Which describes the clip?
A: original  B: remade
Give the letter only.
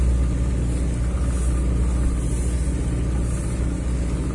A